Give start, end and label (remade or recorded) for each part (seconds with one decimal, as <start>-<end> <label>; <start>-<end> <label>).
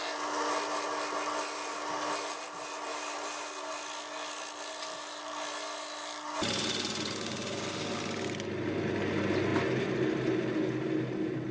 0.0-11.5 recorded